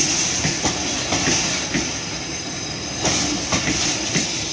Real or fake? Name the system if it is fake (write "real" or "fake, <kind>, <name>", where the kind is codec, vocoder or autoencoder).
real